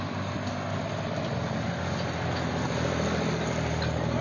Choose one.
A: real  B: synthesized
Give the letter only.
A